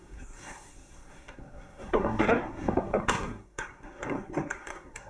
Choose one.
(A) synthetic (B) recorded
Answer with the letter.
A